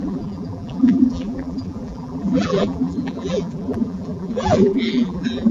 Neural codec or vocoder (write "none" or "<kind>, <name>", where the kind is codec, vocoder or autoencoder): vocoder, BigVGAN v2